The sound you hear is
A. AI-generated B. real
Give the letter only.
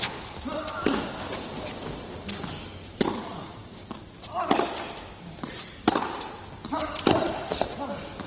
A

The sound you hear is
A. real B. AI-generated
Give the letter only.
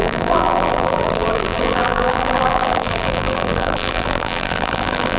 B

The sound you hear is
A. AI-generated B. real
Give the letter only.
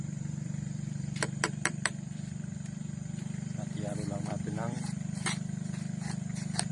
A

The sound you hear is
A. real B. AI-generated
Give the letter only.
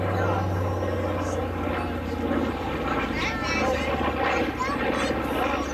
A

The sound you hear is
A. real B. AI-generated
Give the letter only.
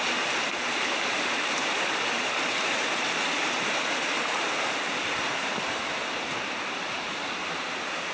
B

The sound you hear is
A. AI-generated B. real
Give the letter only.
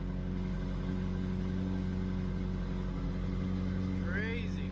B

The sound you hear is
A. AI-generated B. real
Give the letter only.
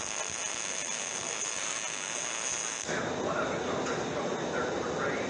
B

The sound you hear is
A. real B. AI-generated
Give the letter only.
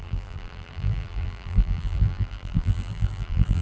B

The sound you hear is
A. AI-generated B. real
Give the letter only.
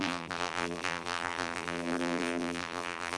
A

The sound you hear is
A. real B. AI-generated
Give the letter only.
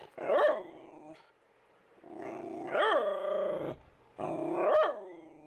A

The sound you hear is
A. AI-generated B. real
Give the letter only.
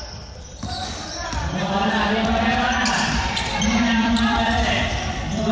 A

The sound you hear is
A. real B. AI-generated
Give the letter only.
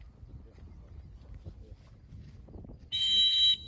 A